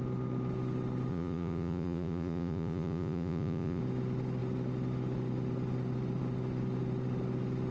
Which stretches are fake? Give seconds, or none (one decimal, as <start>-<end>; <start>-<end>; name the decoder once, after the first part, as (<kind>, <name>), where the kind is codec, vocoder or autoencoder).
1.1-3.8 (vocoder, Vocos)